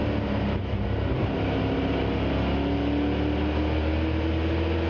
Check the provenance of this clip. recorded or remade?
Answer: recorded